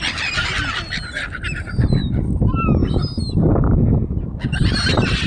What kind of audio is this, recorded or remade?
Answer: recorded